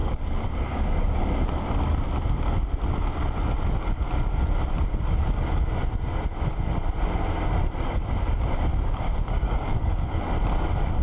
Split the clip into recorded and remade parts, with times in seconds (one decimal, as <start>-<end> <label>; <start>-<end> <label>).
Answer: 0.0-1.2 remade; 1.2-8.7 recorded; 8.7-10.2 remade; 10.2-11.0 recorded